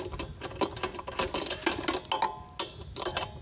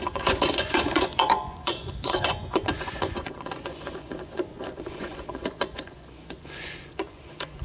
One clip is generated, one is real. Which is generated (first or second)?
second